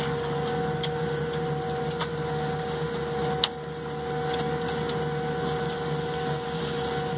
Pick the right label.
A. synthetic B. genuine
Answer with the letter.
B